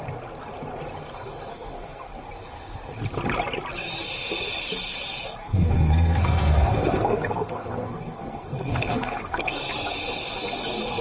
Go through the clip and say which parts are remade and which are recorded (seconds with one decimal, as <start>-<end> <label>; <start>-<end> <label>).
0.0-1.5 recorded; 1.5-2.1 remade; 2.1-5.4 recorded; 5.4-9.6 remade; 9.6-11.0 recorded